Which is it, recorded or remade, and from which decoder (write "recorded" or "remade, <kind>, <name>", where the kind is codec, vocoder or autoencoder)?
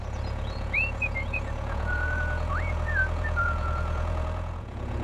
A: remade, vocoder, Vocos